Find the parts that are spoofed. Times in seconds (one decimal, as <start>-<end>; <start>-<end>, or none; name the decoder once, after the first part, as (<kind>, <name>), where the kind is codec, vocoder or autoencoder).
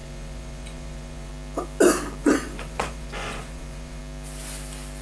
0.0-1.3 (vocoder, Vocos); 2.2-4.0